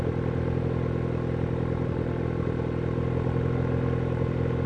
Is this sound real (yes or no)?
yes